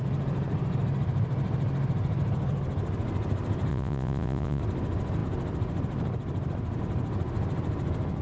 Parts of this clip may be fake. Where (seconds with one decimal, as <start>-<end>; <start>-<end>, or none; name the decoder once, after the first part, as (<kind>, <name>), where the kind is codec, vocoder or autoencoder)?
3.7-4.6 (vocoder, Vocos)